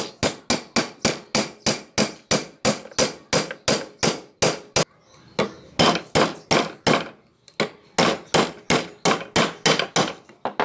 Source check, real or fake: real